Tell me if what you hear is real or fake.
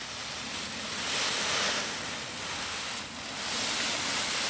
real